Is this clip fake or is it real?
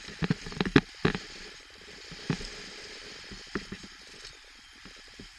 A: real